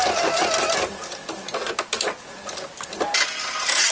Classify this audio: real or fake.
real